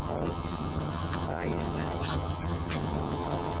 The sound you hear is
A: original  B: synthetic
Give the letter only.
B